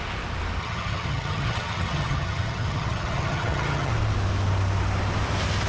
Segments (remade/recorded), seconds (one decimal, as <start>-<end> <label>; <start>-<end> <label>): 0.0-0.6 recorded; 0.6-3.9 remade; 3.9-5.7 recorded